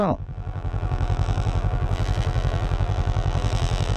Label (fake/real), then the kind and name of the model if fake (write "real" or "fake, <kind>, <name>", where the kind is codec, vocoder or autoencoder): fake, vocoder, BigVGAN v2